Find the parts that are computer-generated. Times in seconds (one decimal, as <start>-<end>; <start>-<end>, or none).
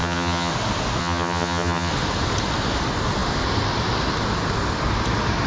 0.0-0.5; 1.0-1.9